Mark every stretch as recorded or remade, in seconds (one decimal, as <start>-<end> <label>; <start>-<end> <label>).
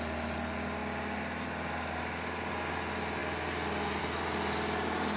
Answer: 0.0-5.2 recorded